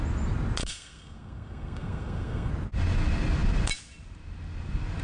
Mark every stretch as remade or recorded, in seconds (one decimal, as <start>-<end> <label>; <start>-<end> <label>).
0.0-0.6 recorded; 0.6-2.5 remade; 2.5-5.0 recorded